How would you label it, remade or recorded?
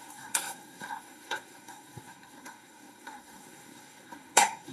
remade